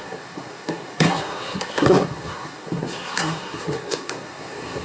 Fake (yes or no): yes